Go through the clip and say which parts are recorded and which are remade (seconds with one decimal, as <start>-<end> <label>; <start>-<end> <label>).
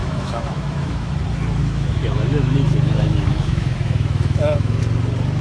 0.0-1.1 remade; 1.1-1.6 recorded; 1.6-4.8 remade; 4.8-5.4 recorded